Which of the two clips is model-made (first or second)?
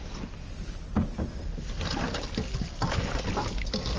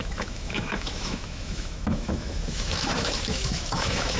second